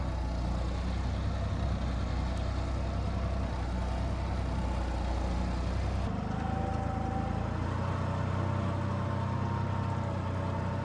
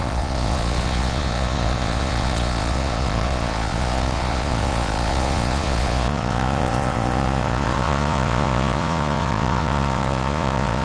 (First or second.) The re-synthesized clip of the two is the second